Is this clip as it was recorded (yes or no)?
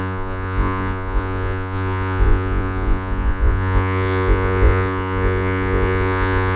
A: no